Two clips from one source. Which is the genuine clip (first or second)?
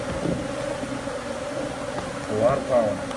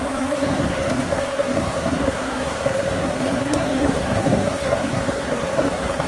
first